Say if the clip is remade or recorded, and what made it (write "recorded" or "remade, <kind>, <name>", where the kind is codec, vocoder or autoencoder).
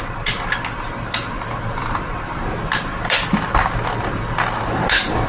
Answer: recorded